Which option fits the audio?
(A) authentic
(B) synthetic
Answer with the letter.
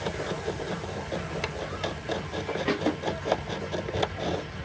A